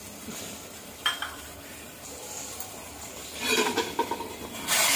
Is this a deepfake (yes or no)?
no